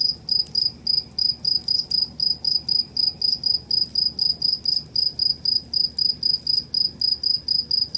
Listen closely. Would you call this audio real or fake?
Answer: real